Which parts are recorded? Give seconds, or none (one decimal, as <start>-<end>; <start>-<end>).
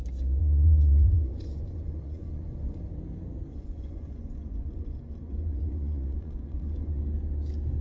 0.0-0.4; 2.9-3.5; 7.0-7.8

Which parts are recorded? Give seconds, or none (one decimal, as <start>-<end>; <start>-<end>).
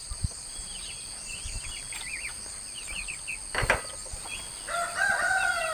1.7-5.7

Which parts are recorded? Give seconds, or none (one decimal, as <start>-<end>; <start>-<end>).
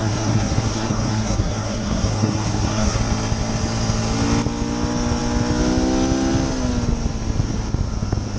3.0-8.4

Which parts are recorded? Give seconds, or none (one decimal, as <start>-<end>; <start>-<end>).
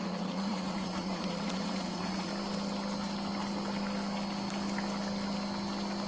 2.3-6.1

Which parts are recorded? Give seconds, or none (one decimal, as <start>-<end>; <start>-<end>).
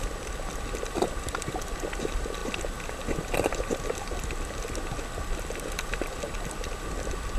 0.0-7.4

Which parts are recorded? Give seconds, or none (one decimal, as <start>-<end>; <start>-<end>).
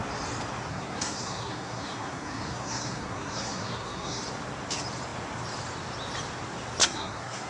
0.0-0.7; 4.2-6.8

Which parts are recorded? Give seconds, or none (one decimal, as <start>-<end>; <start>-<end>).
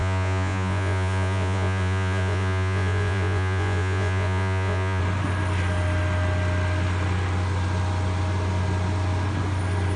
5.0-10.0